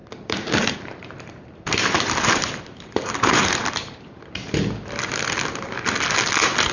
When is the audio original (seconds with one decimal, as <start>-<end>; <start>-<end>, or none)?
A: 4.0-6.7